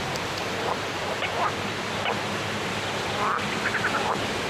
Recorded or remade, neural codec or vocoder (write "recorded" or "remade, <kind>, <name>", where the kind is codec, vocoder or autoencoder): recorded